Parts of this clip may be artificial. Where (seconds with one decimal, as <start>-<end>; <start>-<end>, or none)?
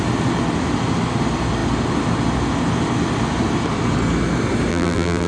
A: 4.7-5.3